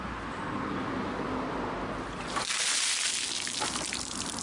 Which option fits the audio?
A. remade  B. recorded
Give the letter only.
B